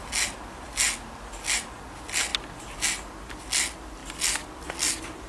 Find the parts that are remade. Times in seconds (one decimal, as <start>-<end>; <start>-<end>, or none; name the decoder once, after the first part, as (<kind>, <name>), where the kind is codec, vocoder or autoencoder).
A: none